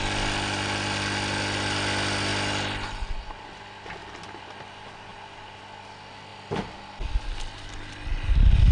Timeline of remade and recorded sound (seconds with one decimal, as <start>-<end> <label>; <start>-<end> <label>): 0.0-5.1 recorded; 5.1-5.6 remade; 5.6-8.7 recorded